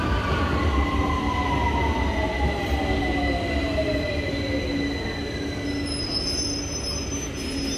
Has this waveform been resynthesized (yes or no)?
no